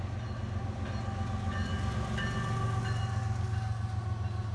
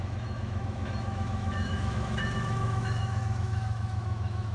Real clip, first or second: first